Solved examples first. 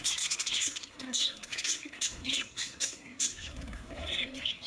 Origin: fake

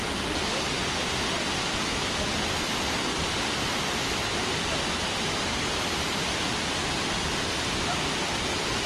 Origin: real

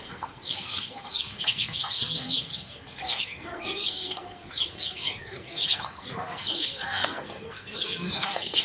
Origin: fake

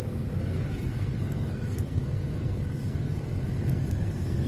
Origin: fake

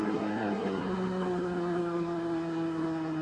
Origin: fake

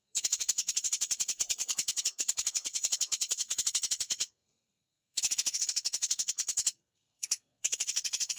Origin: fake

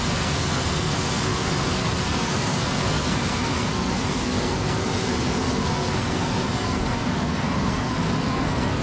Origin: fake